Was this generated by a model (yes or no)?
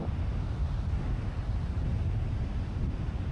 no